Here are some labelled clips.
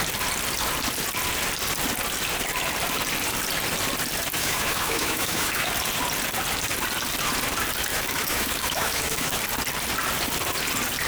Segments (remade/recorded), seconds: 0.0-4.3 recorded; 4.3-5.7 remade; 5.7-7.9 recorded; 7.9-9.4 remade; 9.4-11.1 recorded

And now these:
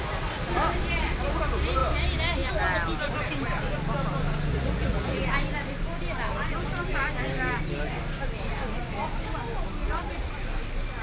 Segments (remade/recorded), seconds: 0.0-4.5 recorded; 4.5-5.3 remade; 5.3-9.8 recorded; 9.8-10.3 remade; 10.3-11.0 recorded

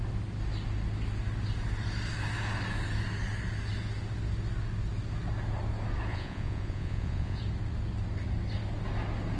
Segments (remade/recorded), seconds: 0.0-6.1 recorded; 6.1-7.4 remade; 7.4-9.4 recorded

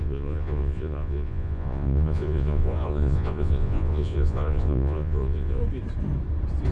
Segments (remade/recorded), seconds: 0.0-5.6 remade; 5.6-6.7 recorded

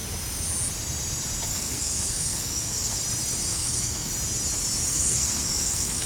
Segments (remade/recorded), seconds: 0.0-1.5 recorded; 1.5-3.0 remade; 3.0-3.5 recorded; 3.5-4.1 remade; 4.1-4.9 recorded; 4.9-6.1 remade

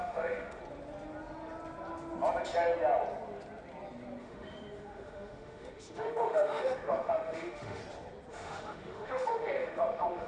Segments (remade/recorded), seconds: 0.0-0.6 remade; 0.6-4.2 recorded; 4.2-7.8 remade; 7.8-8.3 recorded; 8.3-10.3 remade

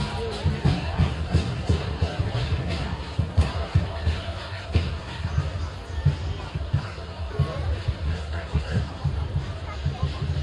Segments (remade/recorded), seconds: 0.0-0.6 recorded; 0.6-5.3 remade; 5.3-6.5 recorded; 6.5-7.3 remade; 7.3-7.8 recorded; 7.8-9.0 remade; 9.0-10.4 recorded

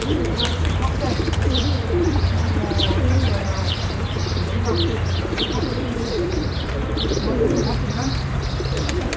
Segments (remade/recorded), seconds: 0.0-4.2 remade; 4.2-5.2 recorded; 5.2-9.2 remade